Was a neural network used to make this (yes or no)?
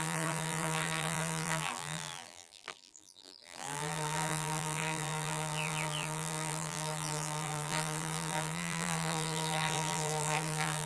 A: yes